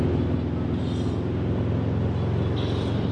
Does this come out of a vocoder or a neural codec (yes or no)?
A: no